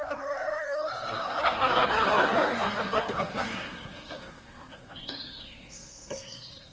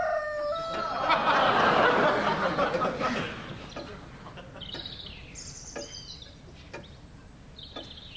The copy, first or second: first